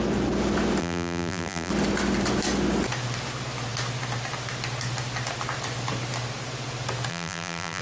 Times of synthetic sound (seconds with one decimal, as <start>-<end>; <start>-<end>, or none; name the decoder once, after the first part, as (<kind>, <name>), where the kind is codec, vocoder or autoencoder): 0.8-1.7 (vocoder, BigVGAN v2); 7.1-7.8